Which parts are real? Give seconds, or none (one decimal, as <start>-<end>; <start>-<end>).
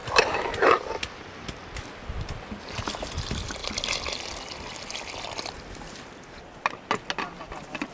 0.0-7.9